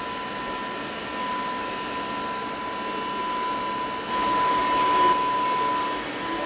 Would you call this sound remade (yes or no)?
no